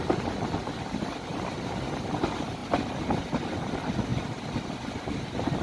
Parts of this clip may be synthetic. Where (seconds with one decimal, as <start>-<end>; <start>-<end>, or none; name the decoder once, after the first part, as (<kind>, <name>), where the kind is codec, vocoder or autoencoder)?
none